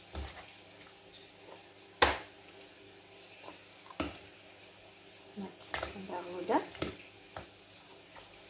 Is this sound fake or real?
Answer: real